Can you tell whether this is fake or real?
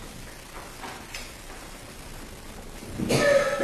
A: real